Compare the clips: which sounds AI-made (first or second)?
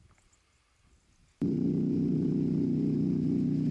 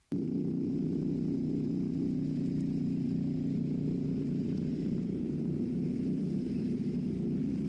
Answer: second